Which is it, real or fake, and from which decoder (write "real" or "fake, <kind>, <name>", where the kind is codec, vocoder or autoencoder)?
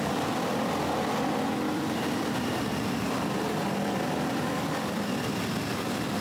fake, vocoder, BigVGAN v2